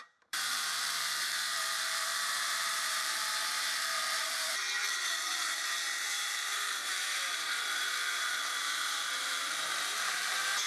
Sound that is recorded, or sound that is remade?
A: remade